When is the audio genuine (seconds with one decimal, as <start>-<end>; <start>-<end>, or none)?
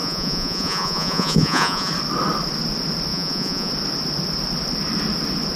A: 1.9-3.1; 3.7-5.6